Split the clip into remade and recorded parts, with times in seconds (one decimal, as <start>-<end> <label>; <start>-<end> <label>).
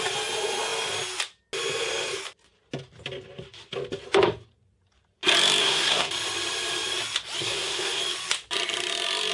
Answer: 0.0-5.6 recorded; 5.6-6.1 remade; 6.1-7.4 recorded; 7.4-8.0 remade; 8.0-9.3 recorded